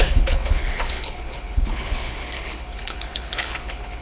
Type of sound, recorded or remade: remade